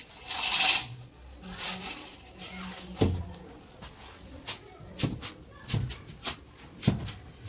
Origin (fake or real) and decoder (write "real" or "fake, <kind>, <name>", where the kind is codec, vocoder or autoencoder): real